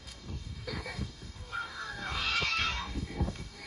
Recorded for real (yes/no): no